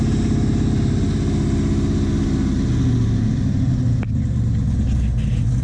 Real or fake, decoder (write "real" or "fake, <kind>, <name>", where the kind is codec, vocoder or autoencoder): real